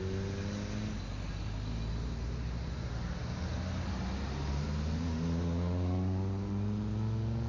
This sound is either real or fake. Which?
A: real